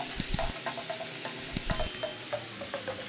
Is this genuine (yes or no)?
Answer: yes